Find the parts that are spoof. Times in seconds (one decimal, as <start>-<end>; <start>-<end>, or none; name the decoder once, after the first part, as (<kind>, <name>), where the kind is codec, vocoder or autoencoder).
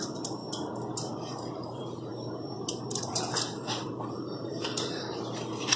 0.0-0.4 (vocoder, BigVGAN v2); 1.1-2.1; 2.7-5.8